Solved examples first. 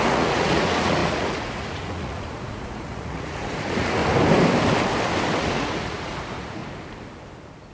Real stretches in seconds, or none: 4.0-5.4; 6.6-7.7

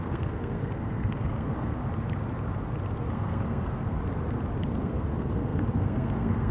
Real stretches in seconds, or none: 1.8-3.1; 4.0-4.8

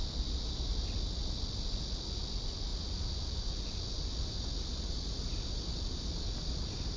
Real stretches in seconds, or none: 0.0-7.0